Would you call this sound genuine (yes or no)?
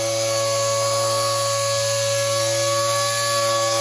yes